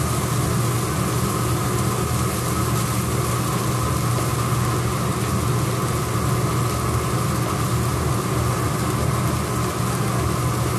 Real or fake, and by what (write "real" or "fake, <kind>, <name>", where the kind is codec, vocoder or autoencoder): real